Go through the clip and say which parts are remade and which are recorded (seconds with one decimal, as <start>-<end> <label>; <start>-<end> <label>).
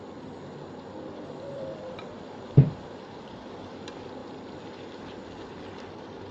0.0-6.3 recorded